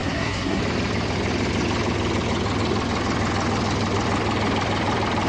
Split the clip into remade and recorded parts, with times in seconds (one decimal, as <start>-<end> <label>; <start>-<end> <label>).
0.0-0.6 remade; 0.6-5.3 recorded